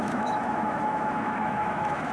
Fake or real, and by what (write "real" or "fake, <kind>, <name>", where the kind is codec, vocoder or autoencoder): fake, autoencoder, DAC-VAE